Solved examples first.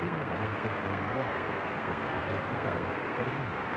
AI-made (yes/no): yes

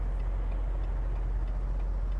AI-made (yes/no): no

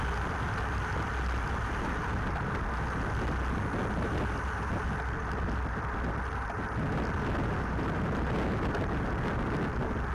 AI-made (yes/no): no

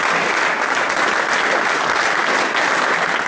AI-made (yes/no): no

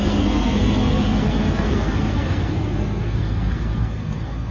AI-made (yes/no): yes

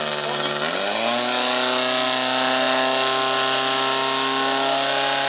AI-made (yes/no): no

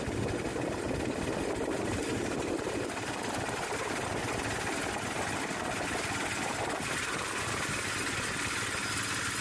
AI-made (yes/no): no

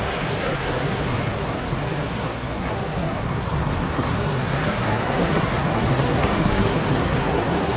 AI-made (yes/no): yes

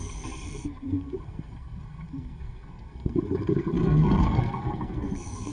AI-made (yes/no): yes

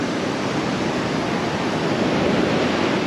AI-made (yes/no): no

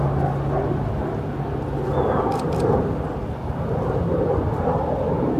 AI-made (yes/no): no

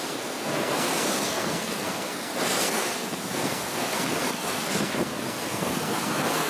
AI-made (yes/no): yes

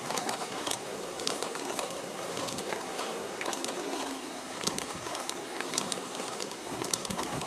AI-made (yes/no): yes